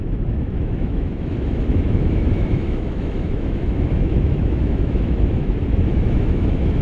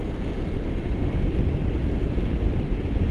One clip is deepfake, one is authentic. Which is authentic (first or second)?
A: second